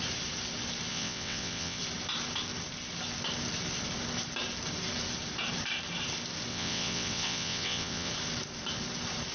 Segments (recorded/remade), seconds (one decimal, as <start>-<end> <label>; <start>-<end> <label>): 0.0-0.9 recorded; 0.9-1.8 remade; 1.8-6.5 recorded; 6.5-8.1 remade; 8.1-9.3 recorded